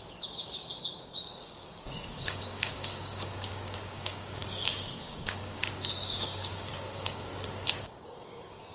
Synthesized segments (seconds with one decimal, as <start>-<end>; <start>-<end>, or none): 0.0-7.3; 7.8-8.7